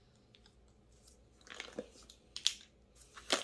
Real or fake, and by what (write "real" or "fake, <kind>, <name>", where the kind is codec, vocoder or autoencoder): real